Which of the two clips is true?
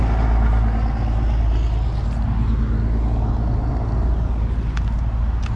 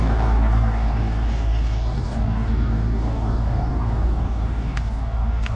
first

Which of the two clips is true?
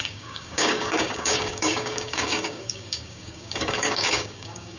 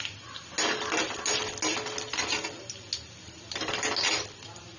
second